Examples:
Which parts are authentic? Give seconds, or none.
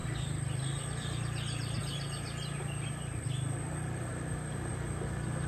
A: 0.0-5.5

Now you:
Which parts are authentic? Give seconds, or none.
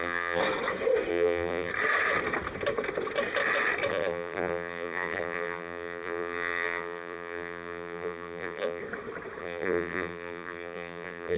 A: 0.4-1.1; 1.7-3.9; 8.8-9.4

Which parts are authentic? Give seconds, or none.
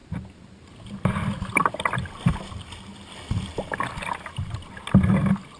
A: 0.0-5.6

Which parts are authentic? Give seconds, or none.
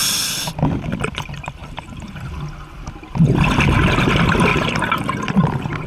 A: 0.0-1.6; 2.3-4.5; 5.0-5.9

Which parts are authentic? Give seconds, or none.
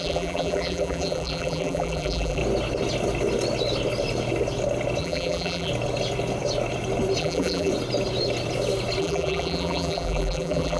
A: 2.4-5.0; 5.7-7.2; 7.7-9.0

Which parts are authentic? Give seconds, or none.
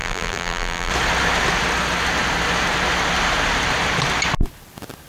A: 0.9-5.1